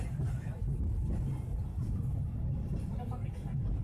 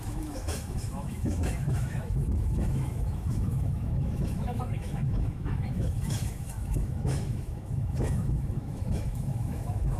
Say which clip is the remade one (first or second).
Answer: second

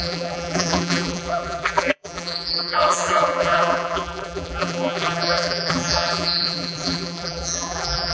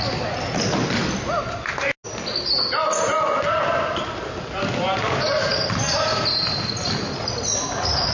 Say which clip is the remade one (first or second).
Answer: first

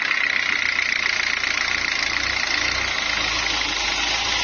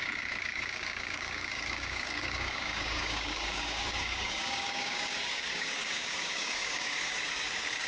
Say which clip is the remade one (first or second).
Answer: second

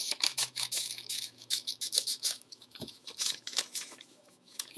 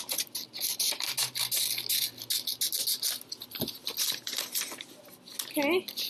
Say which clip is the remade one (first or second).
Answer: first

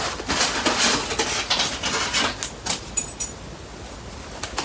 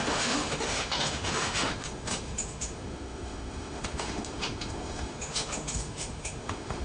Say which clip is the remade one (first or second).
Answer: second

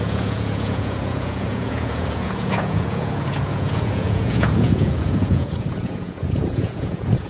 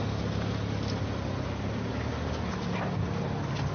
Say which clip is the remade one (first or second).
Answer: first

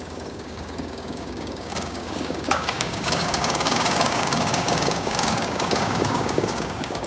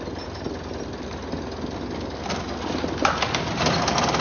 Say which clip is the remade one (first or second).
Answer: first